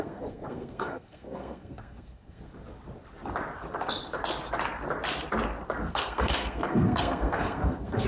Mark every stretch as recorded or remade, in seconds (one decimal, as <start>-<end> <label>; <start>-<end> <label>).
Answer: 0.0-2.5 remade; 2.5-5.9 recorded; 5.9-8.1 remade